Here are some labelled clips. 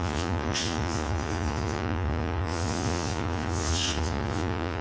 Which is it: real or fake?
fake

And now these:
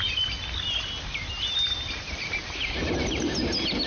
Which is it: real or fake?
real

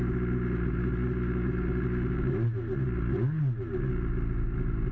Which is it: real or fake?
real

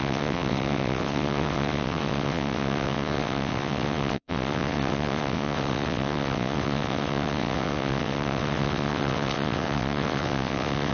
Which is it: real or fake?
fake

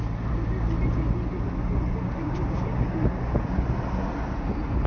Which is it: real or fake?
real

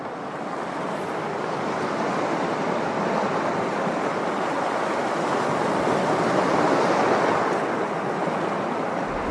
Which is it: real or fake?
real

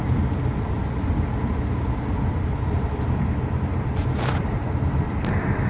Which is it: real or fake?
real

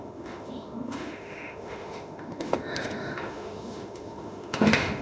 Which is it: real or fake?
fake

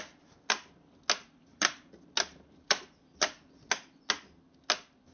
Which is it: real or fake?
real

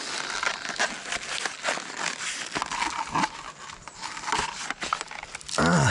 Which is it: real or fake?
real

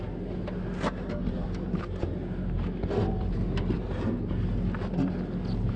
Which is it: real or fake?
real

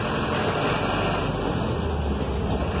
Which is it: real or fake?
real